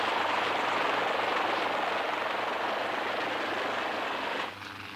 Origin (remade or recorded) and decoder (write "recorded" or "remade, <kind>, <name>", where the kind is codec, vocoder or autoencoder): recorded